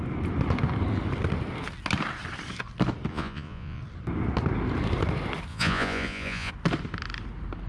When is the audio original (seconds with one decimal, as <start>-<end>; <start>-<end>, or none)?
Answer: 0.0-3.1; 3.8-5.5; 6.5-7.7